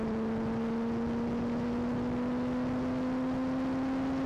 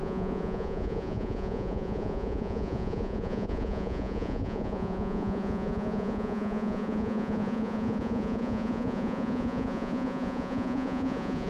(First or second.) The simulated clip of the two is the second